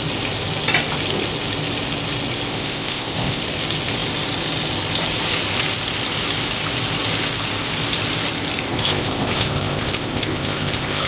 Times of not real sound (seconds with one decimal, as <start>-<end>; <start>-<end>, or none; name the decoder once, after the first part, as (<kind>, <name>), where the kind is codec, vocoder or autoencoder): 2.5-3.4 (codec, ZipCodec); 8.7-11.1